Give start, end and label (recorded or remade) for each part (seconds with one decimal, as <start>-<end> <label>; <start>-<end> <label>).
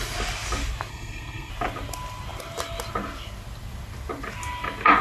0.0-0.9 recorded; 0.9-1.5 remade; 1.5-5.0 recorded